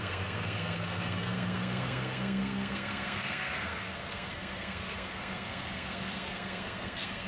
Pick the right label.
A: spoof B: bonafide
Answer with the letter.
A